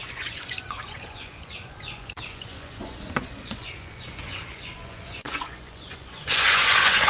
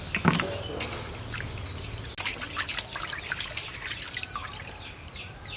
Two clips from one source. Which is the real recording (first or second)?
second